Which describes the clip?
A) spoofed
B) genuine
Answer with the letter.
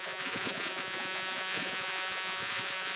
A